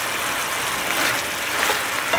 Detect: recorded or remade recorded